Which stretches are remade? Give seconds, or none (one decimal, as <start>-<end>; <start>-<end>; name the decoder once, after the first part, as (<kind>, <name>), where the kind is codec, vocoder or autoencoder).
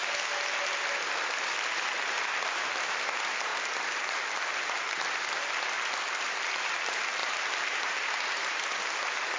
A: 7.2-8.7 (vocoder, BigVGAN v2)